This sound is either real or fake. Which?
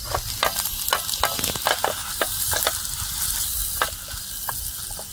real